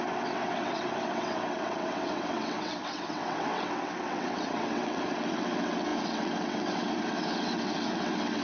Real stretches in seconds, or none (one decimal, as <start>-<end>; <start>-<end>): none